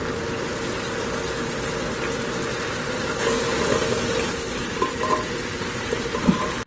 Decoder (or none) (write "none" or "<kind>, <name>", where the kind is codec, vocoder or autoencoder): none